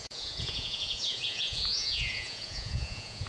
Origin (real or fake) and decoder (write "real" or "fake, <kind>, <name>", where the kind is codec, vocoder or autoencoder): fake, vocoder, Vocos